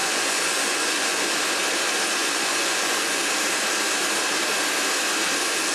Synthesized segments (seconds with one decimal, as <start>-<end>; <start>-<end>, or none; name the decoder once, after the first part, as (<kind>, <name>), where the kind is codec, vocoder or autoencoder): 0.0-1.4 (vocoder, Vocos); 2.2-3.2